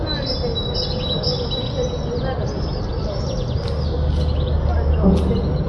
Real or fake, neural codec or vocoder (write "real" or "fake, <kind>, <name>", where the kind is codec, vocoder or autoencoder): real